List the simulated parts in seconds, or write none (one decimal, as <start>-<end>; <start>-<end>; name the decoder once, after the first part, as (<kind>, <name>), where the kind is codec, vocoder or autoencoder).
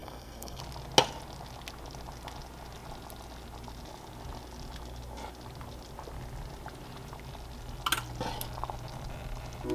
0.0-0.6 (codec, SNAC)